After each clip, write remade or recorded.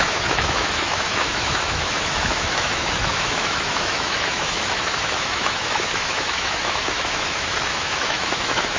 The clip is remade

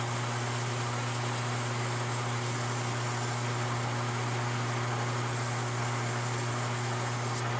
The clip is recorded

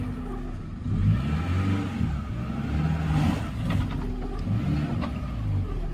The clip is recorded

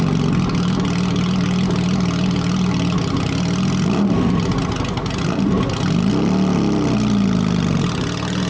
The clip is recorded